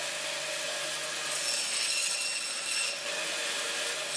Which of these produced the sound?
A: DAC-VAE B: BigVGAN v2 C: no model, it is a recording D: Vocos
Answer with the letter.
C